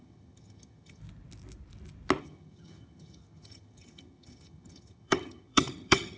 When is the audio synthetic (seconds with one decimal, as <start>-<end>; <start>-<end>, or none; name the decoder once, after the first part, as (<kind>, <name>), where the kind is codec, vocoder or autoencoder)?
0.0-1.0 (vocoder, HiFi-GAN); 2.2-6.2